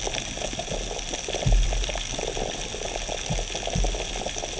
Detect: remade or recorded recorded